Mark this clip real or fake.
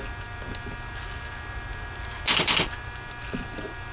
real